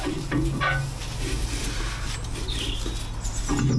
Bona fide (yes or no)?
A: yes